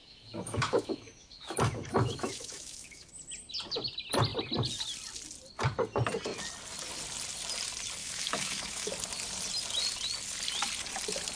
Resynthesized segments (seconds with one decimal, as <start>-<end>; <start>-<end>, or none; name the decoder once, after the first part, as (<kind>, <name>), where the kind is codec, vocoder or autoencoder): 0.0-3.1 (autoencoder, DAC-VAE); 8.0-8.9